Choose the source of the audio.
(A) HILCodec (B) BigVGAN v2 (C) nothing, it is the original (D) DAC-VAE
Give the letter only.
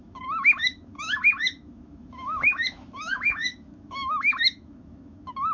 D